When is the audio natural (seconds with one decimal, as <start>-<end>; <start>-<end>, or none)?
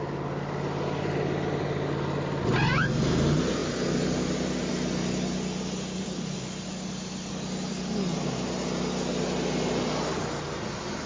0.0-11.1